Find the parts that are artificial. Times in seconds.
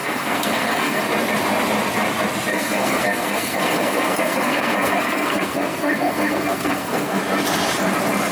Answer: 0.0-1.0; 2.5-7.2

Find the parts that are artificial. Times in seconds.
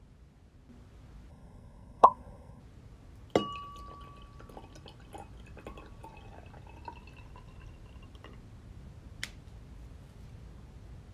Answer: 1.3-2.6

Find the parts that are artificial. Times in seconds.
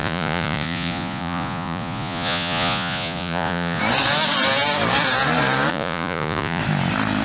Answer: 0.0-3.8; 5.7-6.6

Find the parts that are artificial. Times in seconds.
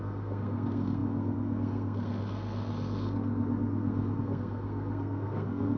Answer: 0.0-5.8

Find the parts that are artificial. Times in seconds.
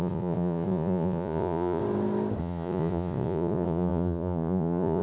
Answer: 0.0-1.8; 2.4-5.0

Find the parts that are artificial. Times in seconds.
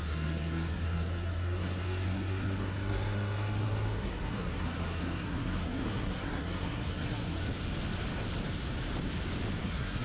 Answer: 0.0-7.4; 9.6-10.0